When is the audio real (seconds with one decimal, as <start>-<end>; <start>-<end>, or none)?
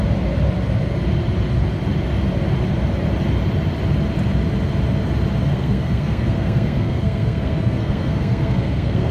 0.0-5.5